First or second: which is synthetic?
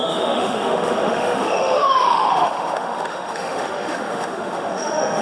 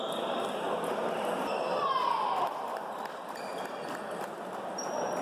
first